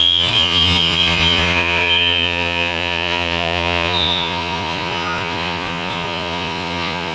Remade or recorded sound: remade